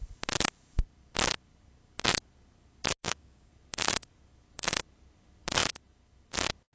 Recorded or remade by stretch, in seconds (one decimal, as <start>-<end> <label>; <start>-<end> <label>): 0.0-3.0 recorded; 3.0-3.5 remade; 3.5-6.7 recorded

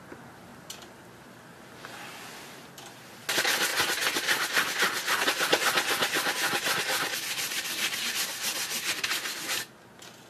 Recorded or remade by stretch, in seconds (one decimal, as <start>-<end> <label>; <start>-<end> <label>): 0.0-10.3 recorded

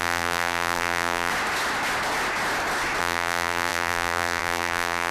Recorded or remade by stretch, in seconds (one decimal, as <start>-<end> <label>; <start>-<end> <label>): 0.0-1.3 remade; 1.3-3.0 recorded; 3.0-5.1 remade

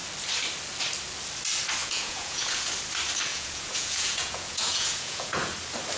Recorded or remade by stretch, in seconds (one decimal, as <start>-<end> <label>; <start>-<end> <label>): 0.0-1.8 recorded; 1.8-2.7 remade; 2.7-3.3 recorded; 3.3-5.5 remade; 5.5-6.0 recorded

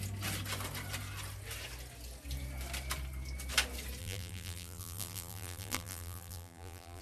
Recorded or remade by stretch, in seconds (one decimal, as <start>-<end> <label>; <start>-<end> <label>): 0.0-4.0 recorded; 4.0-7.0 remade